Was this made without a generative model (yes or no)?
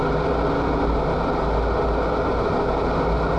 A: yes